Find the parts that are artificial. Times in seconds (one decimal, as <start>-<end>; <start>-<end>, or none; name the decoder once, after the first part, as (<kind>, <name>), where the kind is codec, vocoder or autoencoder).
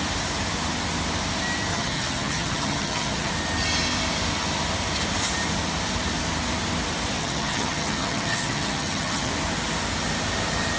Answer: 1.7-3.3 (vocoder, HiFi-GAN); 7.2-9.3